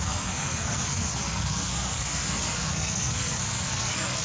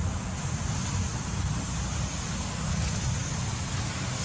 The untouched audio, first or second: second